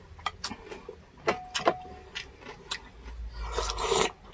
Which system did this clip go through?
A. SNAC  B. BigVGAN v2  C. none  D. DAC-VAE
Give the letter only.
C